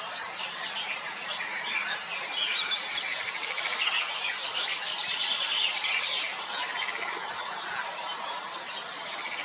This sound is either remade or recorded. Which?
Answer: remade